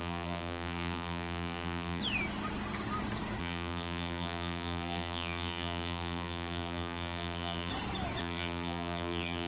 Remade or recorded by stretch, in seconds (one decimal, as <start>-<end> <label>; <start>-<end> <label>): 0.0-2.0 remade; 2.0-3.4 recorded; 3.4-7.7 remade; 7.7-8.2 recorded; 8.2-9.5 remade